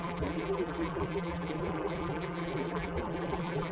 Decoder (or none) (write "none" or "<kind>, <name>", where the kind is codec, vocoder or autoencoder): vocoder, BigVGAN v2